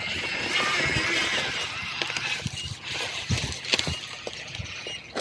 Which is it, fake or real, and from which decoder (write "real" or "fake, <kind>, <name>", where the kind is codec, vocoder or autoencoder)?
real